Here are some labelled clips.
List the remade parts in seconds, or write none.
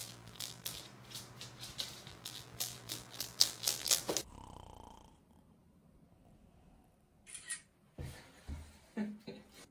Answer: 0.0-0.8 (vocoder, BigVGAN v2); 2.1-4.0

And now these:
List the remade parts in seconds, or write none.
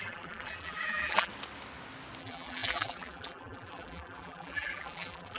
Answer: 0.0-1.3 (vocoder, BigVGAN v2); 2.2-5.4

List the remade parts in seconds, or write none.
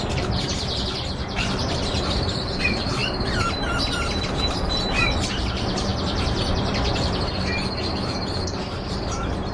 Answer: 0.0-3.0 (vocoder, BigVGAN v2); 4.0-9.5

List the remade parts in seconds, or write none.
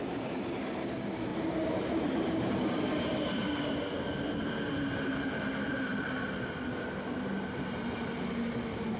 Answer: 1.3-3.8 (vocoder, BigVGAN v2); 5.9-6.5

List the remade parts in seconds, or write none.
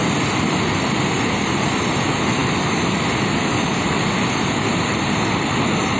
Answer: 0.0-2.4 (vocoder, BigVGAN v2); 4.9-6.0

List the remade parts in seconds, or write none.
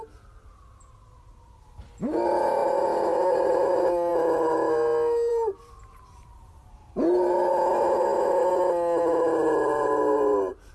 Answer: 5.3-7.1 (vocoder, BigVGAN v2)